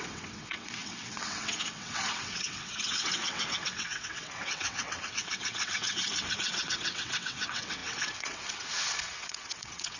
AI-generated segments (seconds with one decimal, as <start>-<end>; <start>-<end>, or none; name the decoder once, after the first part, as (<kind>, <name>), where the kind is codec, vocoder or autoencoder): 0.0-10.0 (vocoder, WaveNeXt)